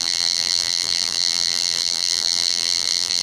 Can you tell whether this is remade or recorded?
remade